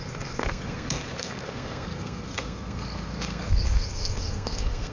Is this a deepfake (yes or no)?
yes